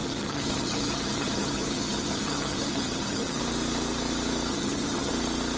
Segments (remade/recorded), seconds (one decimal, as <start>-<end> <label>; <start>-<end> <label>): 0.0-3.4 remade; 3.4-4.5 recorded; 4.5-5.1 remade; 5.1-5.6 recorded